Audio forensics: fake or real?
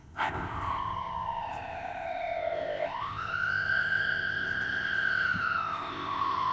fake